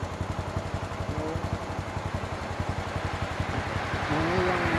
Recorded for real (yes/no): yes